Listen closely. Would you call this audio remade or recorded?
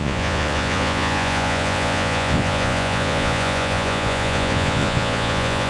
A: remade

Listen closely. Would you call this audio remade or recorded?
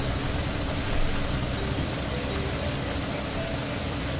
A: recorded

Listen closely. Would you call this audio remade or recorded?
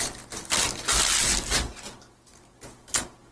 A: recorded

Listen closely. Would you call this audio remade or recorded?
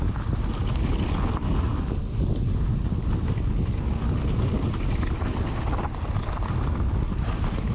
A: recorded